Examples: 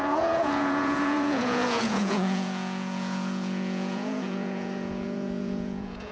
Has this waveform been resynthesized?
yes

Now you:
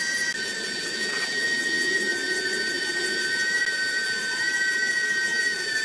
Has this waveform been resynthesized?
no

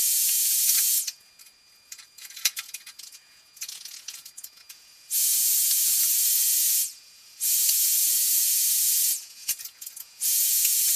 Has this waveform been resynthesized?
yes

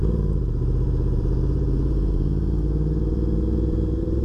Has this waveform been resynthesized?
yes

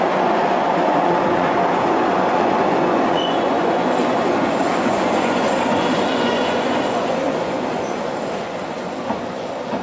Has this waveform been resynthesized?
yes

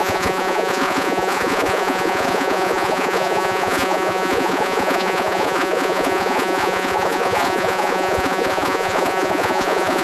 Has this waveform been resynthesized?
yes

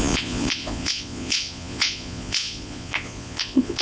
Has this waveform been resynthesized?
yes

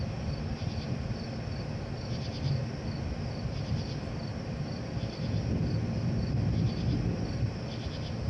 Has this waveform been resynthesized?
no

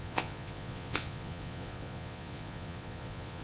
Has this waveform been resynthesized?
yes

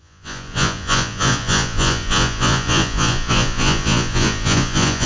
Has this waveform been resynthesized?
yes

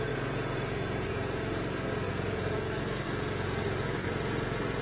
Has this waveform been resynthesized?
yes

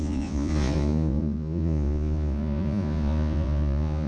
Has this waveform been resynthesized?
yes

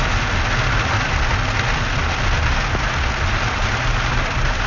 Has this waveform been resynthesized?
no